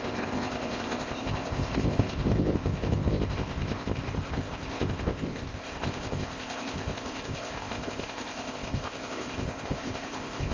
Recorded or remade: remade